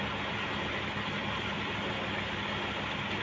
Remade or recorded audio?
recorded